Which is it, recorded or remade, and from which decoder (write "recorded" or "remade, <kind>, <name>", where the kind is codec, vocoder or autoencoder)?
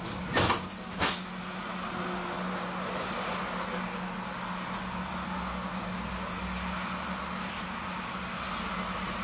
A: recorded